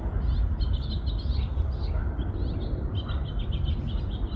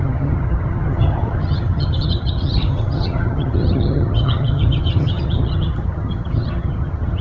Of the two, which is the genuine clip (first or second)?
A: first